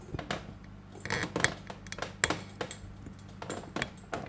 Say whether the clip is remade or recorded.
recorded